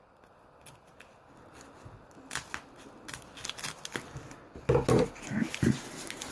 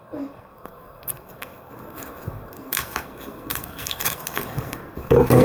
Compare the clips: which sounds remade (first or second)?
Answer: second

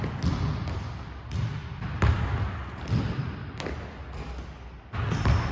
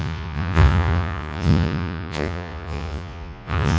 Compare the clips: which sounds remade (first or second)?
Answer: second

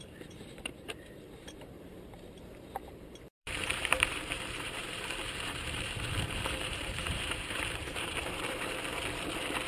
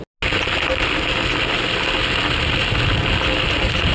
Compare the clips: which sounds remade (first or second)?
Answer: first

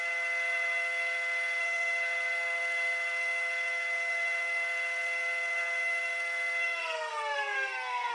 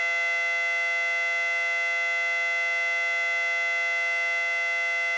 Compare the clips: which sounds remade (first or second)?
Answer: first